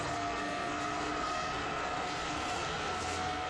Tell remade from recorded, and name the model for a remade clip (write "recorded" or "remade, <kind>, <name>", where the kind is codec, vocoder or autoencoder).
remade, codec, SNAC